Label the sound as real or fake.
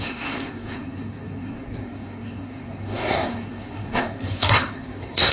fake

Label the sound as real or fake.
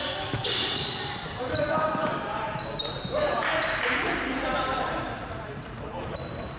fake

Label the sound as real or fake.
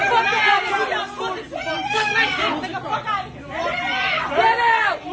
real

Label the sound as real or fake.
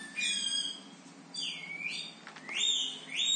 real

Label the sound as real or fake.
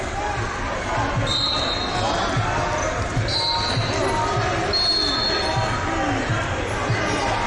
real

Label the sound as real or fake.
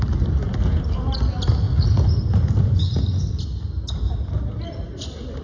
real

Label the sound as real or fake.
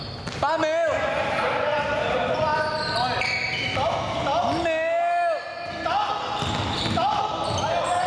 real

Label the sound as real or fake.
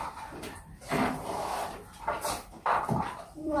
fake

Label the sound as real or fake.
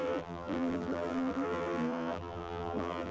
fake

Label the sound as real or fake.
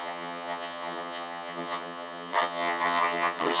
fake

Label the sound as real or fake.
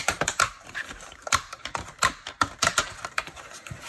fake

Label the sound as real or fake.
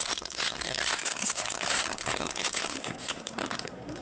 fake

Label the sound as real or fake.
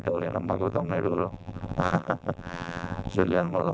fake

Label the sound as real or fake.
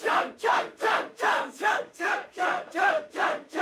fake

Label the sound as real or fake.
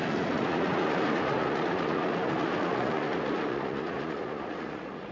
fake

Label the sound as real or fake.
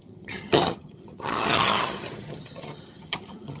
fake